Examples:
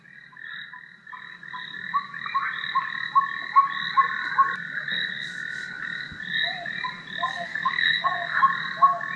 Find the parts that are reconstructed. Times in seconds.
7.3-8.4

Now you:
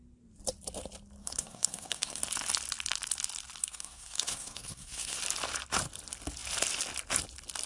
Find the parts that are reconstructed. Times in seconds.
1.2-2.2; 3.6-5.2

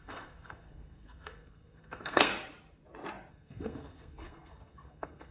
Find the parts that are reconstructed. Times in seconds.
0.0-2.3; 3.3-5.3

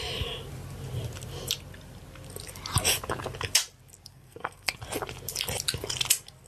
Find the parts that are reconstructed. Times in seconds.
4.1-4.7

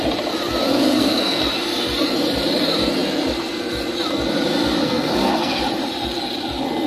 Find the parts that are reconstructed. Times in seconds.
0.7-1.4; 4.8-5.6

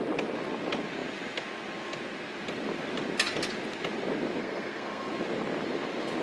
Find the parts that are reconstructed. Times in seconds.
4.4-5.1